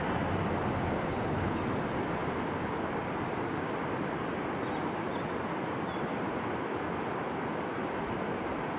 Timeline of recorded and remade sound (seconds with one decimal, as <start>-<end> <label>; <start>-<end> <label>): 0.0-1.0 recorded; 1.0-1.6 remade; 1.6-8.8 recorded